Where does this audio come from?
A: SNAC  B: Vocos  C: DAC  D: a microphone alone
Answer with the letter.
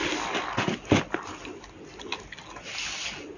D